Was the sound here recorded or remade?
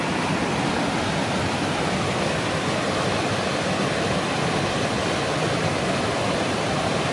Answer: recorded